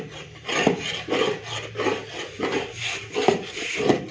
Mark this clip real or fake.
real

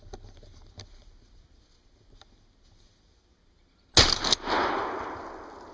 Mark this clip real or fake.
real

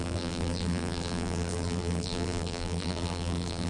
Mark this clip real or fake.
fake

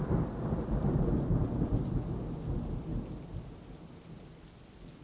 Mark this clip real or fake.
real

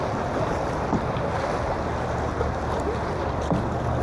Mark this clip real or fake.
fake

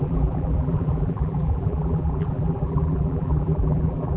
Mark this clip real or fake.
fake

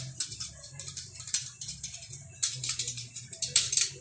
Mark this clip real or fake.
fake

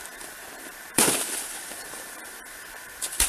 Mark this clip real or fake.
fake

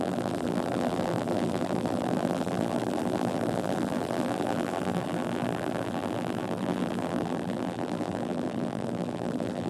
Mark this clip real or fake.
fake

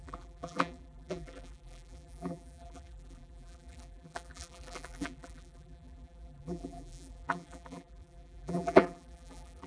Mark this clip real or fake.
fake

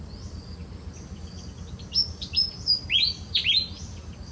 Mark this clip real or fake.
real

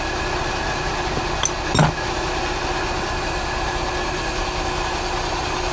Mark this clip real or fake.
real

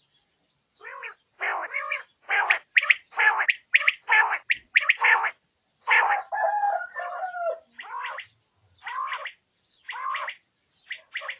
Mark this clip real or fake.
fake